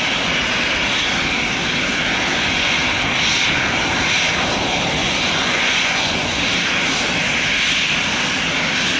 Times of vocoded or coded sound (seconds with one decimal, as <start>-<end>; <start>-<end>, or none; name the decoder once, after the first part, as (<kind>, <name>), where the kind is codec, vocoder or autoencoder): 2.3-2.8 (vocoder, Vocos); 5.0-6.4